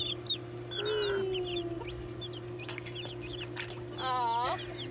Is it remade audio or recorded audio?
recorded